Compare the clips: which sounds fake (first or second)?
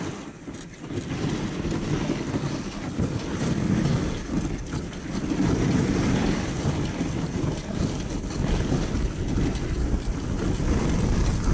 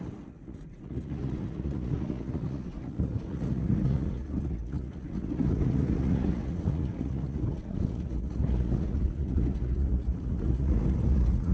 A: second